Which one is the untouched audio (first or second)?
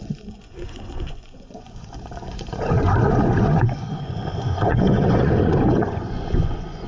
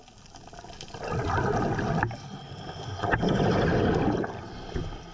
second